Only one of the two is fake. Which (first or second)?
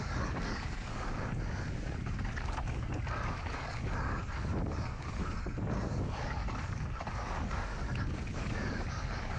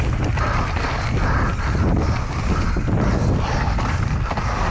first